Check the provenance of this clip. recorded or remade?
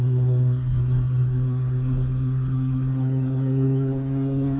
remade